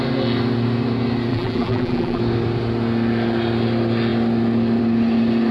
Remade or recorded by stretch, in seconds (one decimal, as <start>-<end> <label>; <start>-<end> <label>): 0.0-1.3 recorded; 1.3-2.2 remade; 2.2-5.5 recorded